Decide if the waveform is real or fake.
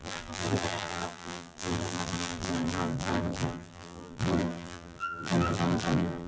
fake